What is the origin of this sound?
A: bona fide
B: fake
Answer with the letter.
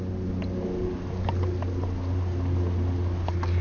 A